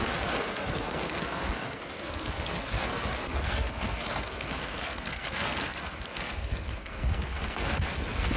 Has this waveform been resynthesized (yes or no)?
yes